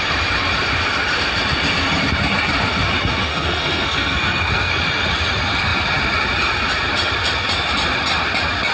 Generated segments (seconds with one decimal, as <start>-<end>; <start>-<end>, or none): 3.3-4.7